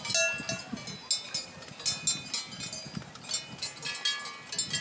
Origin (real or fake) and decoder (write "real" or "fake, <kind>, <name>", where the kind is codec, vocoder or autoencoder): real